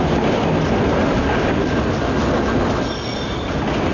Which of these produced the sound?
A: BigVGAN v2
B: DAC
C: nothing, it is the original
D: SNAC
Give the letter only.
A